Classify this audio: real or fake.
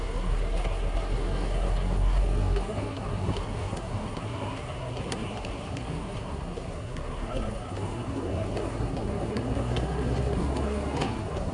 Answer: fake